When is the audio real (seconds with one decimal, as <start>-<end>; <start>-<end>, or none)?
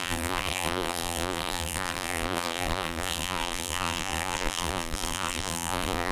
none